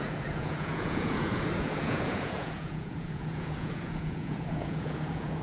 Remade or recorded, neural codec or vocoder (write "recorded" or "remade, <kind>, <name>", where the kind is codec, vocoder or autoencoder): remade, vocoder, Vocos